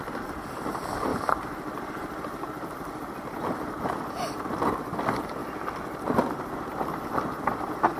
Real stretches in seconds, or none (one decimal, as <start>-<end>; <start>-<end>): 1.1-4.7; 5.4-7.1